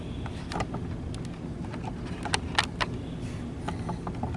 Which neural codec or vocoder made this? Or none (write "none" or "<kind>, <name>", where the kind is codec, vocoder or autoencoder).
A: none